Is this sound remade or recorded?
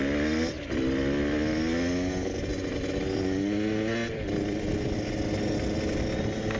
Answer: recorded